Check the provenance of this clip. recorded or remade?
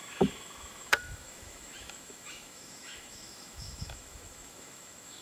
remade